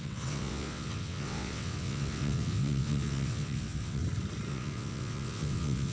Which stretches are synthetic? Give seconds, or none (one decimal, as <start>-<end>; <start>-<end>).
0.0-4.0; 4.5-5.9